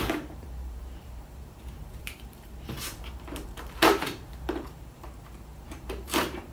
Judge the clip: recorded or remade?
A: remade